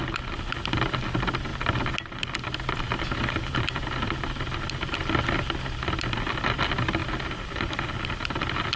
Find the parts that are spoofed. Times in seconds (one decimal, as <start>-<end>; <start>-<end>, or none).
7.0-8.1